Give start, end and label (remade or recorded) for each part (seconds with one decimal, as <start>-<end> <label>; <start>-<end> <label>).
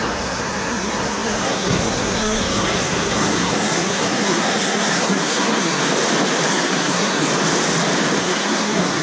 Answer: 0.0-5.8 remade; 5.8-6.5 recorded; 6.5-7.3 remade; 7.3-8.2 recorded; 8.2-9.0 remade